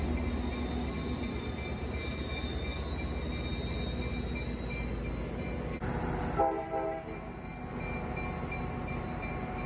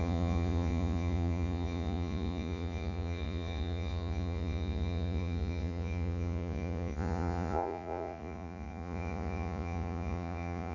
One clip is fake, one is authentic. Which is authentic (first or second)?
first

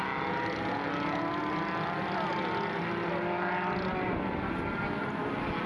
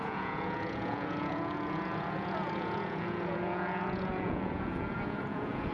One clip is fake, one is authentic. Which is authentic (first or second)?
first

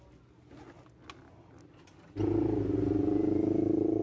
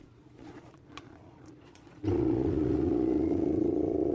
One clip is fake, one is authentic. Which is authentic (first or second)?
first